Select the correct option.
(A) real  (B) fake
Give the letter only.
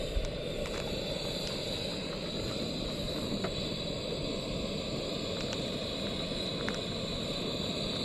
A